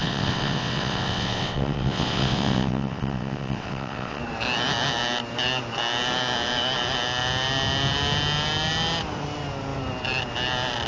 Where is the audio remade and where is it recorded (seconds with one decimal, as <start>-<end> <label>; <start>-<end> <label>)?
0.0-4.2 remade; 4.2-10.9 recorded